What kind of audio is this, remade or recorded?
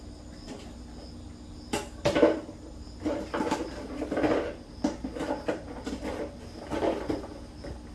recorded